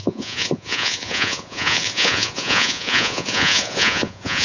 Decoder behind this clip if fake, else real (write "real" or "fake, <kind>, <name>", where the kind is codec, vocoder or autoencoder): fake, vocoder, Vocos